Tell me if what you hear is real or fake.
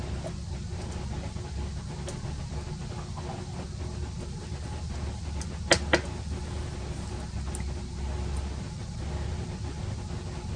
real